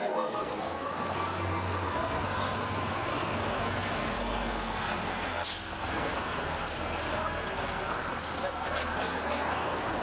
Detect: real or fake fake